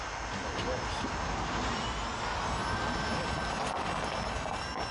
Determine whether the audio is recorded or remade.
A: recorded